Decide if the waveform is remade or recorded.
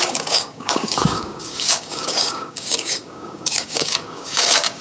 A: remade